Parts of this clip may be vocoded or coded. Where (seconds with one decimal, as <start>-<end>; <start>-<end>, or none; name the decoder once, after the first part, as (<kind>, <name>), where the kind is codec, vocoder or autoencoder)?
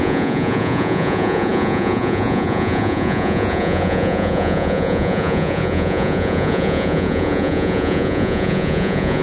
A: 0.0-9.2 (vocoder, Vocos)